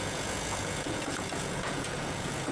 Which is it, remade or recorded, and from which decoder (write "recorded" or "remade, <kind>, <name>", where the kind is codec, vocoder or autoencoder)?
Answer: remade, vocoder, Vocos